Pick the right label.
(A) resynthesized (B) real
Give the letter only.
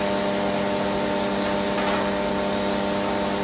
B